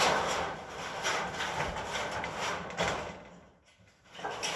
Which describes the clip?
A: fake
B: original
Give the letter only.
B